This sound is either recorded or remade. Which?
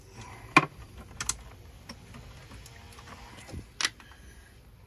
recorded